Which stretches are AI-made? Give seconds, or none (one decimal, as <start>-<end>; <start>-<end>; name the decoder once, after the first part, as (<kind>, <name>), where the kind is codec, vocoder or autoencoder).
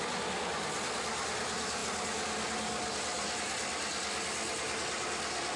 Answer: none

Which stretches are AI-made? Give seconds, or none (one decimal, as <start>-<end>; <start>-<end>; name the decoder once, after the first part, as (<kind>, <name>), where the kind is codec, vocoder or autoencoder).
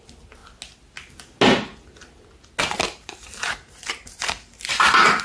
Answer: 0.0-0.4 (vocoder, BigVGAN v2); 2.6-5.2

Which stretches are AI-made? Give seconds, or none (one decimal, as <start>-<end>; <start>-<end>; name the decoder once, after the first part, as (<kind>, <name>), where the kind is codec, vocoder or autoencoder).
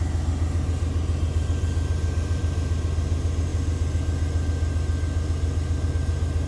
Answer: none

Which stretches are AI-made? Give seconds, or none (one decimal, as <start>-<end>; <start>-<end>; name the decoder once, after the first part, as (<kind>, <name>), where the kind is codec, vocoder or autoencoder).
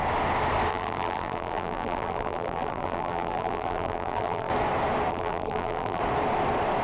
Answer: 0.7-4.5 (vocoder, BigVGAN v2); 5.1-6.0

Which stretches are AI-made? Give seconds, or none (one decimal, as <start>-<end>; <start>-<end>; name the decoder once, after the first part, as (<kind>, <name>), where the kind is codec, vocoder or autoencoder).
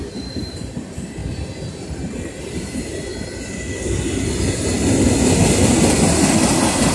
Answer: 0.0-1.2 (vocoder, BigVGAN v2); 2.4-3.1